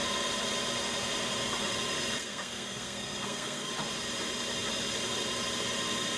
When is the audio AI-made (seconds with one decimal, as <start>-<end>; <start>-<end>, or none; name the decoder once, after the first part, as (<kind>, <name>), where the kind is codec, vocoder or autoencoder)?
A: 2.2-3.7 (codec, SNAC)

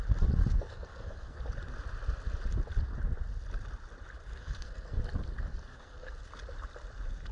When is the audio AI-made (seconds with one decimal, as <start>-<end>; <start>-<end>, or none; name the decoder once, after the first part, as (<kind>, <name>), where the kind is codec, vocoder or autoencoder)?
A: 0.4-1.4 (codec, SNAC); 4.3-5.0; 5.7-6.2

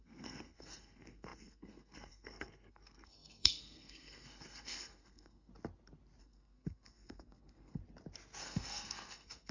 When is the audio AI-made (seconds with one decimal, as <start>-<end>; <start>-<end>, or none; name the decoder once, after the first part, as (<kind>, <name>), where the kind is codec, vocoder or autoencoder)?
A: 0.0-5.5 (codec, SNAC); 6.2-7.8; 8.4-9.5

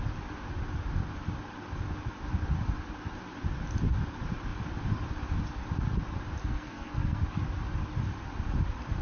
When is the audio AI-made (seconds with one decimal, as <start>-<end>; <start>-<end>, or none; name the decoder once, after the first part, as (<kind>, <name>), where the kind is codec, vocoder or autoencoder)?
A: 6.4-7.2 (codec, SNAC)

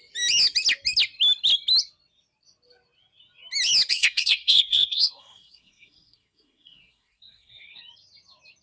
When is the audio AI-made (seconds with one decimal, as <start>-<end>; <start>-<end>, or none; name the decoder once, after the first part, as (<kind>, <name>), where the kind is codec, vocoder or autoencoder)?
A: 3.9-7.8 (codec, SNAC)

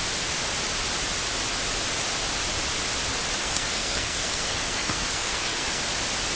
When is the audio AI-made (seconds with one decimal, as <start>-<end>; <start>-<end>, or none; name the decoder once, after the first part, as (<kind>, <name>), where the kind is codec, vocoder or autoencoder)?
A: 3.4-5.8 (codec, SNAC)

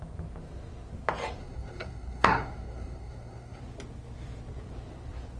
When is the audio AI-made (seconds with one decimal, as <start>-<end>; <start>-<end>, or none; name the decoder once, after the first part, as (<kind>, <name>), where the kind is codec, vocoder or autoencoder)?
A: 1.4-3.6 (codec, SNAC)